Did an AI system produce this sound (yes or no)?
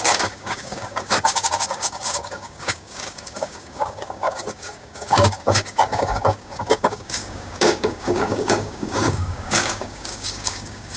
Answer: yes